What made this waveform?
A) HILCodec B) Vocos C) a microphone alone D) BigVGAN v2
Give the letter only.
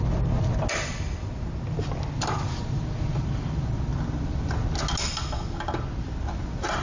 C